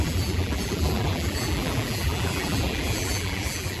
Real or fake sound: fake